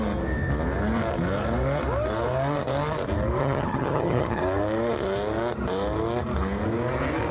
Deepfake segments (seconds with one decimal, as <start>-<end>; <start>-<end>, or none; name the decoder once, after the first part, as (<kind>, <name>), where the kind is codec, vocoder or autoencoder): 3.4-4.4 (vocoder, HiFi-GAN)